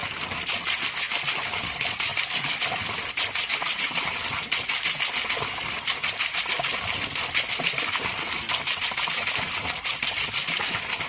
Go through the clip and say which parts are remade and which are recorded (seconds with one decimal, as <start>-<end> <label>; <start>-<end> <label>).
0.0-1.6 recorded; 1.6-3.5 remade; 3.5-6.7 recorded; 6.7-11.1 remade

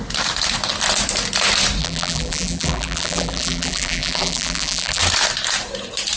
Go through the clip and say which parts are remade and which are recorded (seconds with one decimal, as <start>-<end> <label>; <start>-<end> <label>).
0.0-1.8 recorded; 1.8-5.0 remade; 5.0-6.2 recorded

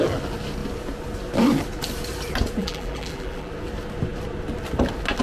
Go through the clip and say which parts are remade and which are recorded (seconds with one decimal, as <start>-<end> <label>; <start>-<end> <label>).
0.0-2.6 recorded; 2.6-3.5 remade; 3.5-5.2 recorded

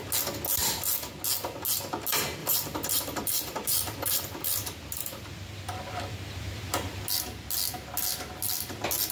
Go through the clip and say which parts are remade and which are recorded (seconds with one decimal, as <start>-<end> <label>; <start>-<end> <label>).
0.0-0.5 recorded; 0.5-1.1 remade; 1.1-2.4 recorded; 2.4-7.1 remade; 7.1-9.1 recorded